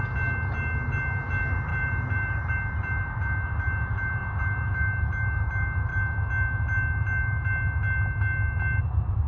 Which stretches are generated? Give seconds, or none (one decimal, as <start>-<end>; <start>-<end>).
1.7-2.5